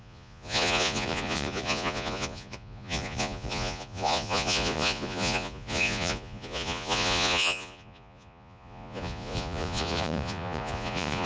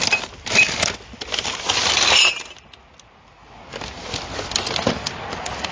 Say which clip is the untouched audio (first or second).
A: second